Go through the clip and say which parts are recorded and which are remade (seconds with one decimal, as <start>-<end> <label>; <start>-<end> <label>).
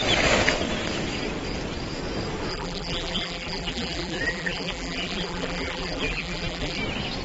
0.0-2.5 recorded; 2.5-6.8 remade; 6.8-7.2 recorded